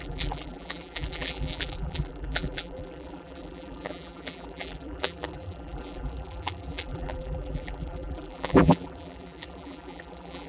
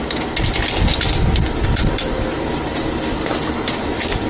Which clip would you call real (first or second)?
second